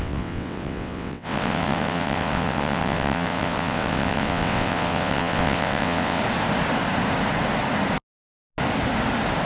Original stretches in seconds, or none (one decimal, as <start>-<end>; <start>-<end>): 6.2-9.5